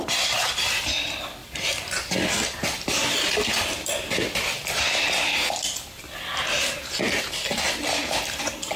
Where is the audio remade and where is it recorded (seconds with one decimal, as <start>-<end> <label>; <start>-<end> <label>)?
0.0-1.4 recorded; 1.4-2.1 remade; 2.1-8.8 recorded